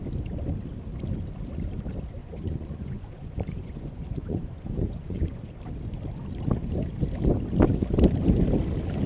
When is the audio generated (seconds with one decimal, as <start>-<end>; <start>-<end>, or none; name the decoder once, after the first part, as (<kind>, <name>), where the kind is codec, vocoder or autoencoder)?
2.2-5.4 (vocoder, Vocos)